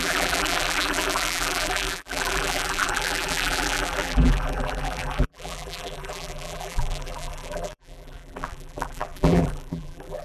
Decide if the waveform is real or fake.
fake